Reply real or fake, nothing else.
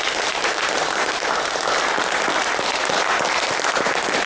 fake